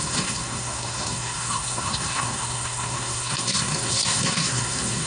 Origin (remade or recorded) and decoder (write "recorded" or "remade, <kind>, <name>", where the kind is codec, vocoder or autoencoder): remade, codec, SNAC